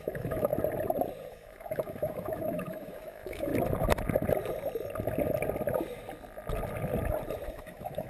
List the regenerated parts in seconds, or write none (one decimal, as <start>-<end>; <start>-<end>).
0.0-0.5; 1.3-3.5; 7.5-8.1